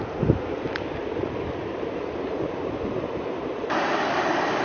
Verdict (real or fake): real